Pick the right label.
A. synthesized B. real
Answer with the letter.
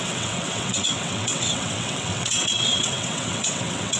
A